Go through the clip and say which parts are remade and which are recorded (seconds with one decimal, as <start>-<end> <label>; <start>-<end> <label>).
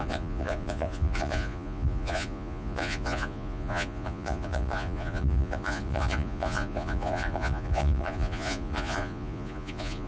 0.0-10.1 remade